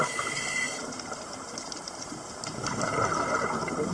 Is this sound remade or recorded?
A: recorded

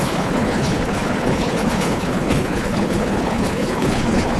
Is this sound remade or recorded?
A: remade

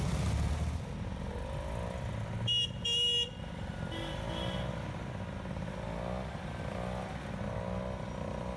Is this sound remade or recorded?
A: recorded